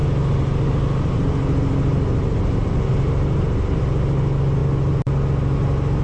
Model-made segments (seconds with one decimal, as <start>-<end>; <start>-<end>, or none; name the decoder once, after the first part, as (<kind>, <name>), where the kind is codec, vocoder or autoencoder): none